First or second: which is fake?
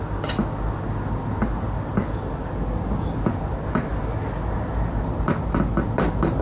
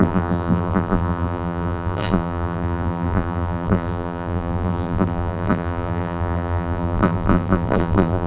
second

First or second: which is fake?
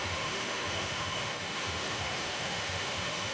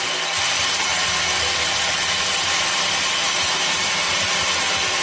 first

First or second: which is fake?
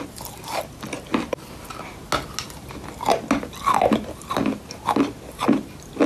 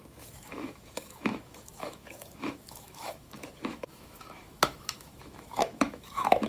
second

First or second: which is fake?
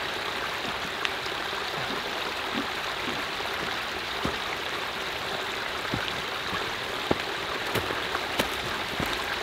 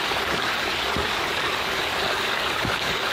second